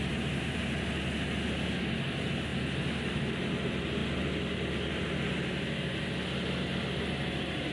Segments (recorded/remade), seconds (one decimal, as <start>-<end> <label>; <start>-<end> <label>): 0.0-7.7 recorded